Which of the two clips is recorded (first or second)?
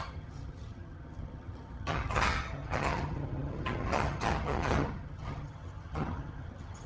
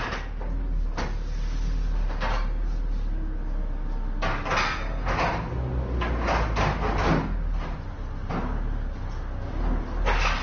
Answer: second